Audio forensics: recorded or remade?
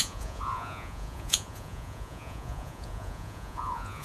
remade